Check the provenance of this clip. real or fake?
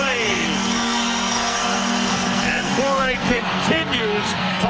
fake